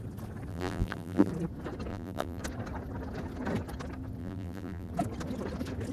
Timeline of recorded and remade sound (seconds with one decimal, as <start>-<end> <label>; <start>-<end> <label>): 0.0-0.5 recorded; 0.5-1.3 remade; 1.3-1.9 recorded; 1.9-2.4 remade; 2.4-4.2 recorded; 4.2-4.9 remade; 4.9-5.9 recorded